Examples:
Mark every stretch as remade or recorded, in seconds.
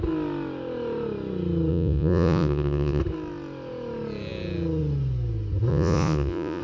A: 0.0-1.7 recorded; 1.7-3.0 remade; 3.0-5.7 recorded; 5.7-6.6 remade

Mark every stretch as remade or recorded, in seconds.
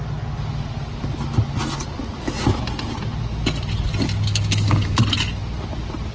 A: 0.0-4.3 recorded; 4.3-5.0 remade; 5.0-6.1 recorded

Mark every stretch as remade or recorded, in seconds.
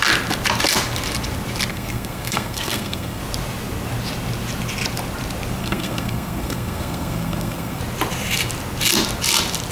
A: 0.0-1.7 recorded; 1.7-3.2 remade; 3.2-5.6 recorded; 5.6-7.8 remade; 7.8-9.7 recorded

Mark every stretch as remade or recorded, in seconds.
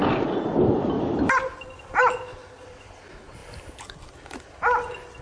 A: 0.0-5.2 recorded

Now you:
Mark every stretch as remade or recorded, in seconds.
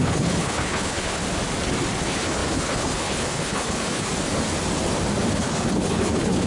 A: 0.0-1.2 remade; 1.2-2.0 recorded; 2.0-4.1 remade; 4.1-5.3 recorded; 5.3-6.5 remade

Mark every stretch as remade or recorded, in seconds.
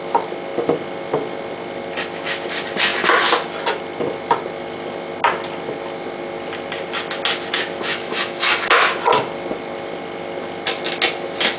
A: 0.0-7.9 recorded; 7.9-8.6 remade; 8.6-11.6 recorded